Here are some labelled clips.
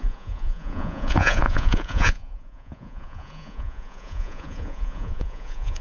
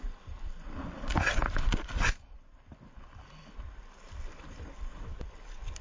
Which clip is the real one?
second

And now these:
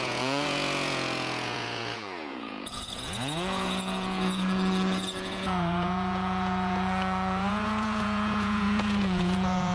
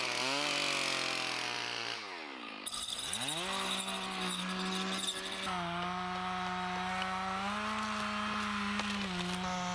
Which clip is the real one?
second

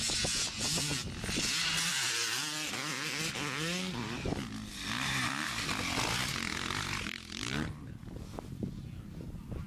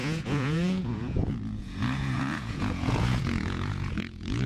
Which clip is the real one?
first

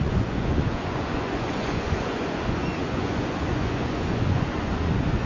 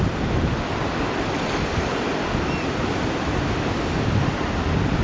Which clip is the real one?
second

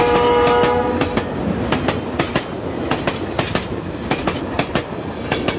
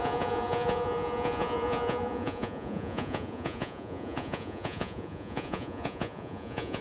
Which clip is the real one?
first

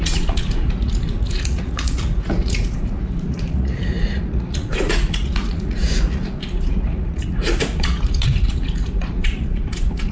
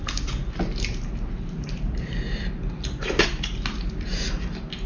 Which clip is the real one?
second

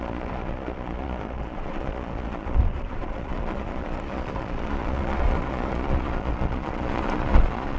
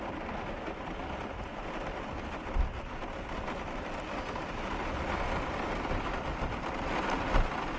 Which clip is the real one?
second